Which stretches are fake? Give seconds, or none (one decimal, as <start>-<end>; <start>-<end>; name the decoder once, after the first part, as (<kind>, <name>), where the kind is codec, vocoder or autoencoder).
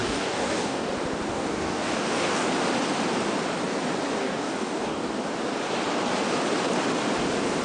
0.0-0.9 (codec, DAC); 1.3-2.5; 4.2-5.1